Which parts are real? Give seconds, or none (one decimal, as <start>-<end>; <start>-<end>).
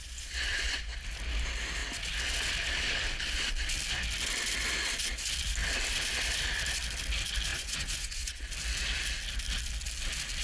0.8-7.5; 8.5-10.4